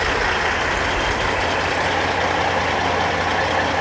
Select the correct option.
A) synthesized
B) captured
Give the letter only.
B